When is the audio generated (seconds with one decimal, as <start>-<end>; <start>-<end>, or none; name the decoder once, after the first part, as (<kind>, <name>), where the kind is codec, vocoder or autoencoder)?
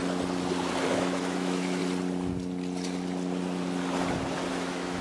0.9-1.8 (autoencoder, DAC-VAE); 4.5-5.0